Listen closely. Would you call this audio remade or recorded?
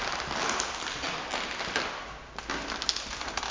recorded